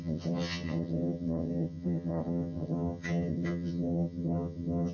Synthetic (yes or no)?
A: yes